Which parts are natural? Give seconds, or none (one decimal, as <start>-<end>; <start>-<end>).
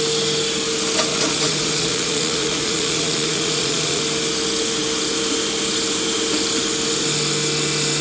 0.0-1.1; 4.0-8.0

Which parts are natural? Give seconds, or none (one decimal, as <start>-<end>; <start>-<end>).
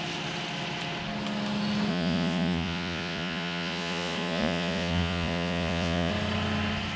0.0-1.9; 6.1-7.0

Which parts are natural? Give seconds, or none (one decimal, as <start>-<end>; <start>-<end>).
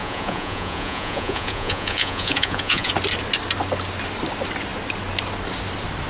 2.9-6.1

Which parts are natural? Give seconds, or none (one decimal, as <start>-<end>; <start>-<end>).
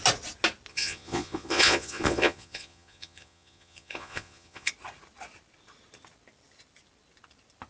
0.0-0.7; 4.7-7.7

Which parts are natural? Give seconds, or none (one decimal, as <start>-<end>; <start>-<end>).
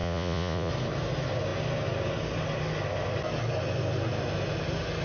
0.7-5.0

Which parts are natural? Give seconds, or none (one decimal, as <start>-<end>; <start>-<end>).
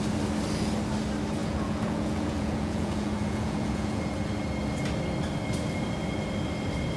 0.0-1.4; 4.0-7.0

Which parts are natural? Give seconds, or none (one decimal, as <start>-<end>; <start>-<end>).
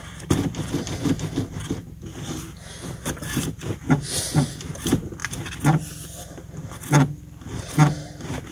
0.0-8.5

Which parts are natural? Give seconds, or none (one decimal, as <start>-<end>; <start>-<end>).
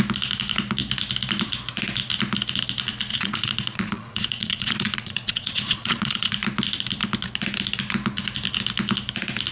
0.0-3.1; 6.3-9.5